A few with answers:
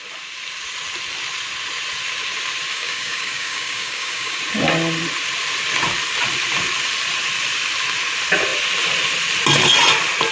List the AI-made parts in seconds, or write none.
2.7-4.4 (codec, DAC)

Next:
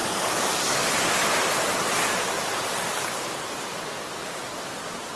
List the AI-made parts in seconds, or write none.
0.0-0.9 (codec, DAC)

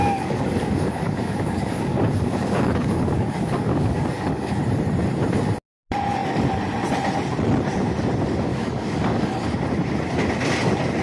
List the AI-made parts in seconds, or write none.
0.0-4.6 (codec, DAC); 8.5-9.3

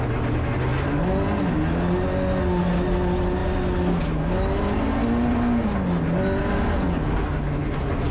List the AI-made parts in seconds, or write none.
none

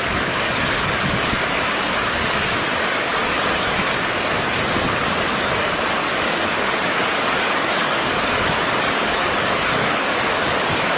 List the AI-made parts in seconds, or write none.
0.0-11.0 (codec, DAC)

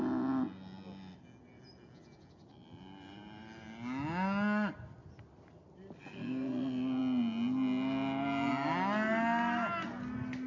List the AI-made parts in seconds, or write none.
6.0-6.5 (codec, DAC)